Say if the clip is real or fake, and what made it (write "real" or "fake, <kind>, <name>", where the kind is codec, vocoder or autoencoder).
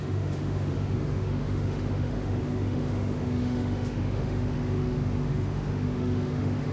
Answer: fake, autoencoder, DAC-VAE